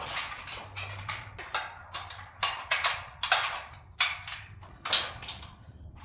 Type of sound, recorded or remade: recorded